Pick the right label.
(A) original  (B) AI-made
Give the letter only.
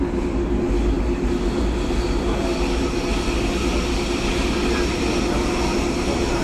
A